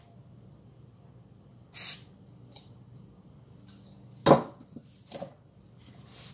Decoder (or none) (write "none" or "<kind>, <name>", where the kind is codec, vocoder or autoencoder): none